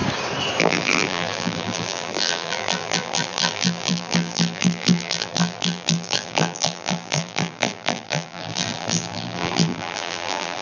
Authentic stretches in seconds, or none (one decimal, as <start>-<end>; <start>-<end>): 0.0-0.6